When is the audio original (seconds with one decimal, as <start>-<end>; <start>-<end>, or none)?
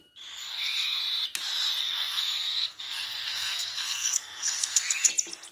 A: 0.0-0.4; 1.0-1.8; 5.1-5.5